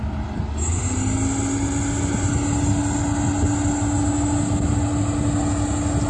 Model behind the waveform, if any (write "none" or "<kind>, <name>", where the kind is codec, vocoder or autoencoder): none